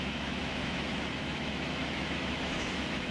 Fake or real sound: fake